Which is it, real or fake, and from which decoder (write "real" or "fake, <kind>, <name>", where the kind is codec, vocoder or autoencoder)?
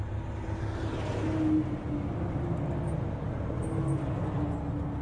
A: real